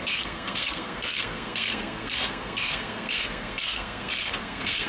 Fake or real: fake